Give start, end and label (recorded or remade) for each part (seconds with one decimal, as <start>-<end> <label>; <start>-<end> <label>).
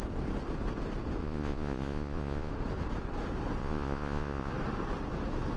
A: 0.0-1.2 recorded; 1.2-2.5 remade; 2.5-3.6 recorded; 3.6-4.5 remade; 4.5-5.6 recorded